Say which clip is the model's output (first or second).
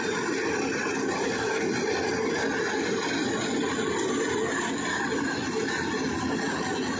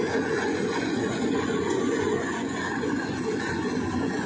second